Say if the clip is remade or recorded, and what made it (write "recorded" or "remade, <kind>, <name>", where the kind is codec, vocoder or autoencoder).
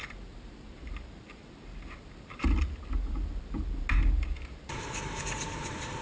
recorded